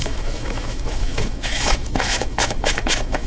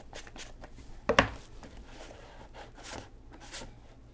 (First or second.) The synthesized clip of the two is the first